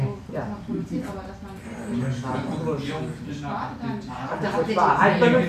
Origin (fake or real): real